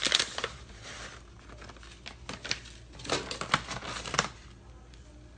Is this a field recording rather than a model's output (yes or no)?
yes